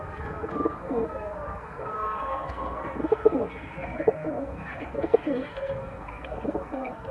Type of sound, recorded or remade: remade